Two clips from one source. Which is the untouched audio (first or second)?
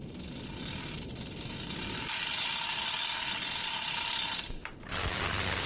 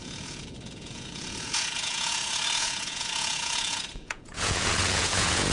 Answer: first